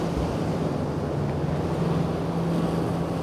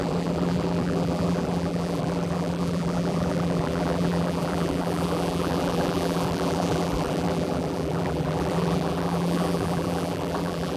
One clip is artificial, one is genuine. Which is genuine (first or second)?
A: first